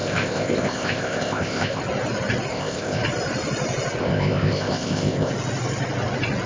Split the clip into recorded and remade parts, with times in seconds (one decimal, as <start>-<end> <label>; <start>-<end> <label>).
0.0-1.8 remade; 1.8-2.5 recorded; 2.5-3.0 remade; 3.0-4.0 recorded; 4.0-5.3 remade; 5.3-6.5 recorded